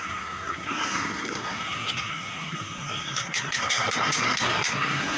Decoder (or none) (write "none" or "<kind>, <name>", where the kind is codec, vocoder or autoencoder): codec, SNAC